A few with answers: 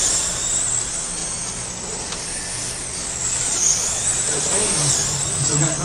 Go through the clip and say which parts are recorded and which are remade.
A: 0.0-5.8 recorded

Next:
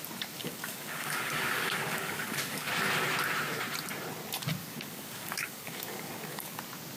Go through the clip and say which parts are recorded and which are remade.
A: 0.0-0.4 recorded; 0.4-2.7 remade; 2.7-4.6 recorded; 4.6-6.6 remade; 6.6-7.0 recorded

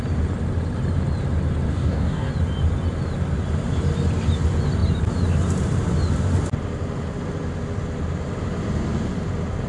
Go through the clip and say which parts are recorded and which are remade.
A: 0.0-1.7 recorded; 1.7-2.3 remade; 2.3-9.7 recorded

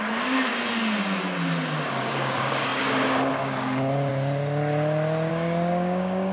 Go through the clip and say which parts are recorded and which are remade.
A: 0.0-0.5 remade; 0.5-2.0 recorded; 2.0-4.1 remade; 4.1-5.3 recorded; 5.3-6.3 remade

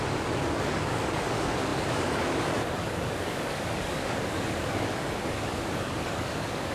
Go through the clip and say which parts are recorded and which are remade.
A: 0.0-6.7 remade

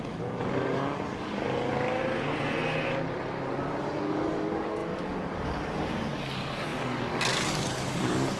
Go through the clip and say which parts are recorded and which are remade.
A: 0.0-2.0 remade; 2.0-3.8 recorded; 3.8-8.4 remade